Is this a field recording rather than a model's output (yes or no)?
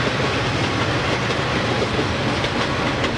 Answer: yes